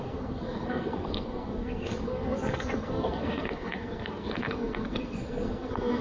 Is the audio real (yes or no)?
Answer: no